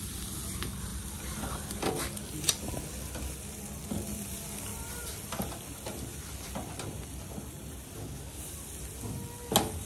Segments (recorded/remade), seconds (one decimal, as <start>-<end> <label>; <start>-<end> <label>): 0.0-9.9 recorded